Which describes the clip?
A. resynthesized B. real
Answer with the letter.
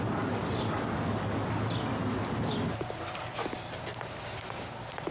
B